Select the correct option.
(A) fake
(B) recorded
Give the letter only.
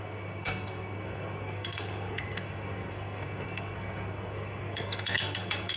A